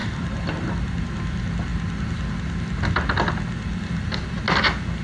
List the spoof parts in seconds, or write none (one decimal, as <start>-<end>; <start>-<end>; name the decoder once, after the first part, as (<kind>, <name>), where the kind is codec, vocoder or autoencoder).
0.0-1.0 (vocoder, BigVGAN v2); 3.7-4.4